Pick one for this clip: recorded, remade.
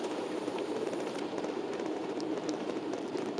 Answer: remade